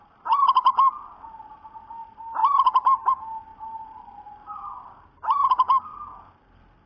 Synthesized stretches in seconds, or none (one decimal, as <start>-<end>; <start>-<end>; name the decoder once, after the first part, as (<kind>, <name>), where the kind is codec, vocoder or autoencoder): 2.4-3.1 (vocoder, BigVGAN v2); 3.5-6.4